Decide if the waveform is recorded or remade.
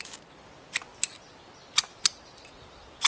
recorded